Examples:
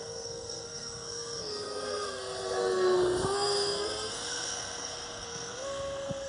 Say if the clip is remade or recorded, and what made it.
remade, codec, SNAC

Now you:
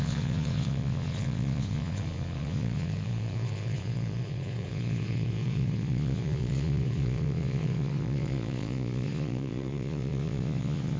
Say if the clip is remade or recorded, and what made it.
remade, vocoder, Vocos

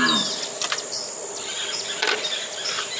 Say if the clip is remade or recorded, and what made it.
recorded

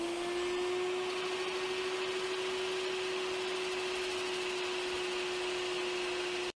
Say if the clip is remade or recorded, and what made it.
recorded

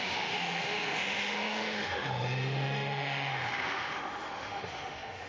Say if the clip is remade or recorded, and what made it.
remade, autoencoder, DAC-VAE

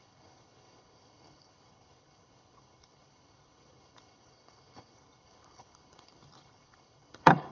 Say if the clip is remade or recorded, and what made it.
remade, codec, HILCodec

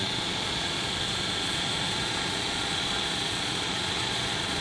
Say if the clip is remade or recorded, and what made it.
remade, vocoder, Vocos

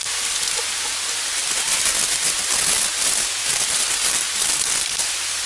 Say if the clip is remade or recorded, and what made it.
recorded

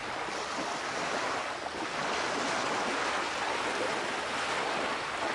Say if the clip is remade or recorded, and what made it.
recorded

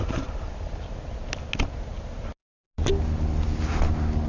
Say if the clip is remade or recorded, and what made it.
recorded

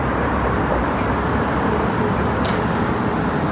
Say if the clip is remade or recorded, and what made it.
recorded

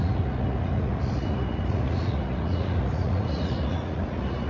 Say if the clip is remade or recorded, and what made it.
remade, vocoder, Vocos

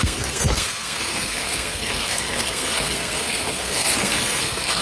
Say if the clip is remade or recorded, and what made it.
remade, codec, SNAC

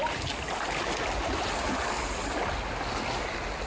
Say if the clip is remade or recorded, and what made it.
recorded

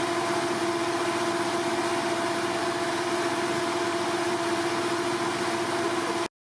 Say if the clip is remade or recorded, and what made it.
recorded